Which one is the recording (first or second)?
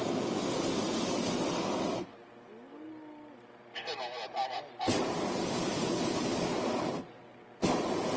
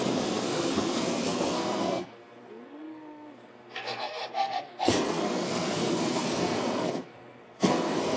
first